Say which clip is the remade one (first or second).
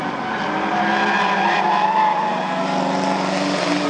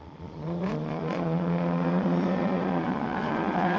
second